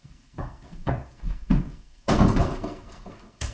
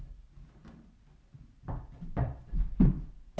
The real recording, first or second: second